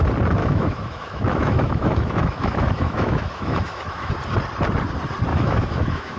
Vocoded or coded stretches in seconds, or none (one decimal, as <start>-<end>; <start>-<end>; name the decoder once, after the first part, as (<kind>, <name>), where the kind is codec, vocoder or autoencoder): 0.4-4.1 (autoencoder, DAC-VAE); 5.3-6.2